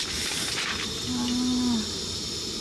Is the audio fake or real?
real